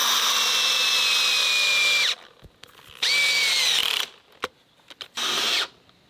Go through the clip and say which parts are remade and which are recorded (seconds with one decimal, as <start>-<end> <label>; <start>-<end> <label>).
0.0-6.1 recorded